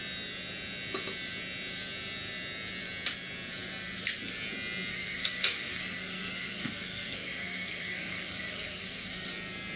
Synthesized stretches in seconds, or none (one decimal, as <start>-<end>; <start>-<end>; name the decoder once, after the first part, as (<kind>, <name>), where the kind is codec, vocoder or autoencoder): 4.9-9.3 (codec, SNAC)